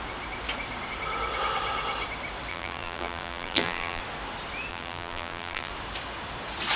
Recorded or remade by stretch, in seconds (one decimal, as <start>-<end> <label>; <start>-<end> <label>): 0.0-2.5 recorded; 2.5-4.0 remade; 4.0-4.7 recorded; 4.7-5.7 remade; 5.7-6.8 recorded